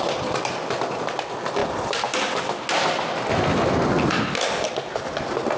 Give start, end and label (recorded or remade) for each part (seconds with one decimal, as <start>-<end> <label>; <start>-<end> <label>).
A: 0.0-5.6 recorded